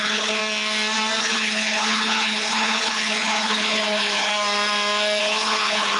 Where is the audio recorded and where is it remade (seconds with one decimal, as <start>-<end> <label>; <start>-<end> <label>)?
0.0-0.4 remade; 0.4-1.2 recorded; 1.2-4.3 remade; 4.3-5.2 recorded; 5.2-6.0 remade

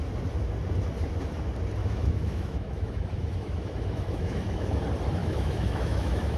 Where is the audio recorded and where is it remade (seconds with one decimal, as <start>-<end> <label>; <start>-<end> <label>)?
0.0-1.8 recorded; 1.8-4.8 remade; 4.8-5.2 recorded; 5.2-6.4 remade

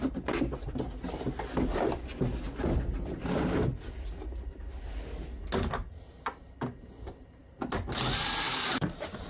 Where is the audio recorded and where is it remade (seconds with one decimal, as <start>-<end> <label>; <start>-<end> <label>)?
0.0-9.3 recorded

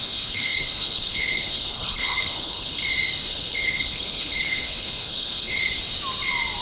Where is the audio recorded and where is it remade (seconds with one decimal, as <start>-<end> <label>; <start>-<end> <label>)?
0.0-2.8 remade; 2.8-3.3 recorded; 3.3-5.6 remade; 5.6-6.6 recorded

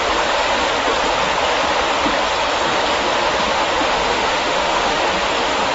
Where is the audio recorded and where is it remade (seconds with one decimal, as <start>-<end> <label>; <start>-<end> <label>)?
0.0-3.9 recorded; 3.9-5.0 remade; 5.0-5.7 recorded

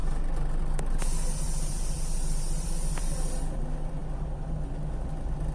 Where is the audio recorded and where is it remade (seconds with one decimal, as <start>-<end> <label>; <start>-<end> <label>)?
0.0-4.0 remade; 4.0-4.9 recorded; 4.9-5.5 remade

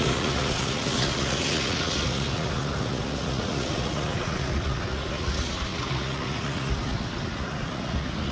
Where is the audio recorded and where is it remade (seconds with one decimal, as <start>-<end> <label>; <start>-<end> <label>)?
0.0-8.3 remade